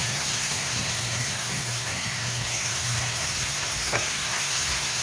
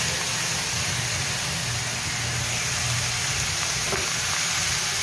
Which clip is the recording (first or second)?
second